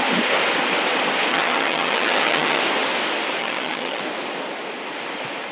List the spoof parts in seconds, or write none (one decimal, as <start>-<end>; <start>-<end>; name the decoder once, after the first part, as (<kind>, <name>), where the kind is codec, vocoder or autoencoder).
1.3-2.6 (vocoder, HiFi-GAN); 3.4-4.0